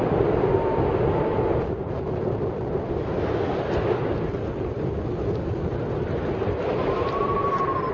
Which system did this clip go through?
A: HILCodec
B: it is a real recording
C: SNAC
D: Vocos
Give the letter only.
B